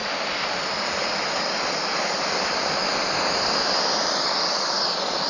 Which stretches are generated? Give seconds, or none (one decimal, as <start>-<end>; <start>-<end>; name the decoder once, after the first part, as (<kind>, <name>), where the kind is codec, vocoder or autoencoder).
0.8-5.3 (vocoder, BigVGAN v2)